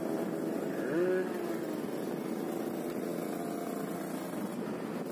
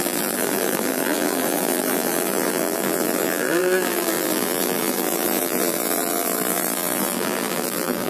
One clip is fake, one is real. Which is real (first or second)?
first